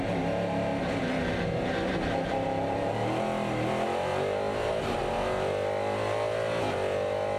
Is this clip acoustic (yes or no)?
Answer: yes